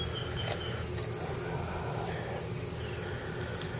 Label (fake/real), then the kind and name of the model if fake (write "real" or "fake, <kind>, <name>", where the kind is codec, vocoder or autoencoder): real